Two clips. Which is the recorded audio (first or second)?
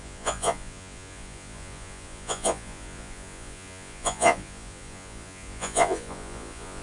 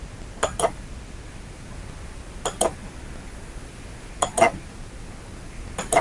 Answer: second